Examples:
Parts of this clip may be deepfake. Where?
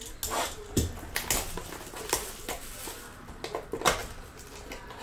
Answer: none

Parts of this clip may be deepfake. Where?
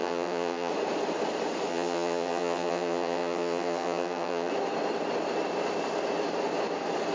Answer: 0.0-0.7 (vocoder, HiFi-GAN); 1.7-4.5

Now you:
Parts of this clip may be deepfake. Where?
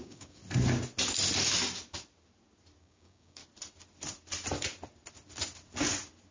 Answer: 0.0-0.4 (codec, DAC); 2.8-3.4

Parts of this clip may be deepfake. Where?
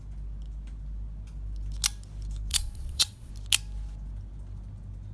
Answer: 2.5-3.3 (vocoder, Vocos)